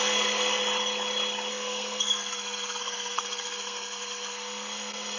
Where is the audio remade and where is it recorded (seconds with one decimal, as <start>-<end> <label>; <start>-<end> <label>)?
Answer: 0.0-0.6 remade; 0.6-1.5 recorded; 1.5-5.2 remade